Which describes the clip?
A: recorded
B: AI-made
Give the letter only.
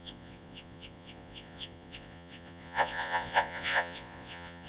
B